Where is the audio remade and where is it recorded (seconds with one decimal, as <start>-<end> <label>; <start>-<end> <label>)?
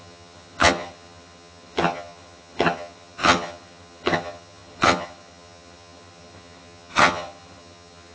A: 0.0-8.1 remade